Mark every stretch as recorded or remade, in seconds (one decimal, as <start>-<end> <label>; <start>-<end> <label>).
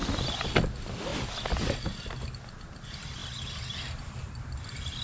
0.0-1.1 remade; 1.1-2.6 recorded; 2.6-3.2 remade; 3.2-4.1 recorded; 4.1-5.0 remade